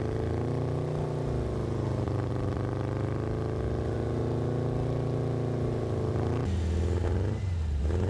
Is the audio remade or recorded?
recorded